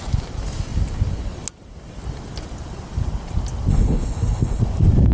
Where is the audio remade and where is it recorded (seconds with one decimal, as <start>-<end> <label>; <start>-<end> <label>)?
0.0-3.7 recorded; 3.7-4.6 remade; 4.6-5.1 recorded